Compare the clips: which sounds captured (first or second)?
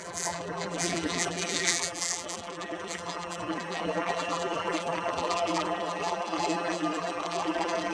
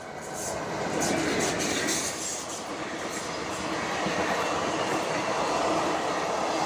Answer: second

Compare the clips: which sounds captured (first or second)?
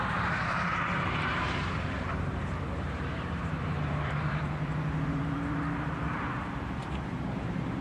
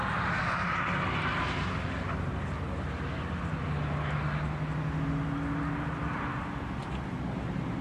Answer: second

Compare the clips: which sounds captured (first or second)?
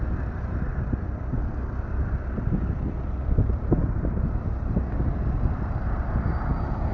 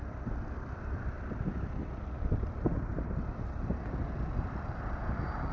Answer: first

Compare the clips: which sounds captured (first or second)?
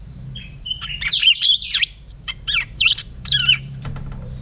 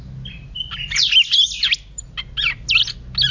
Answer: second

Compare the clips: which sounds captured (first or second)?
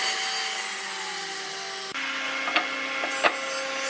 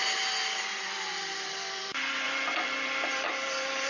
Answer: first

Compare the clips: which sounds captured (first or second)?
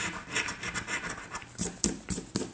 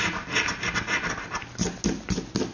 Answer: second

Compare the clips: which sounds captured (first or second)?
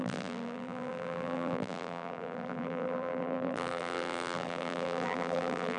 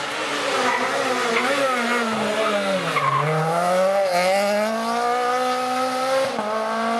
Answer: second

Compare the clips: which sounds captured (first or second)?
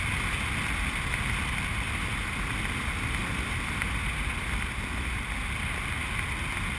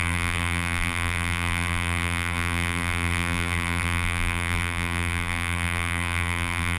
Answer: first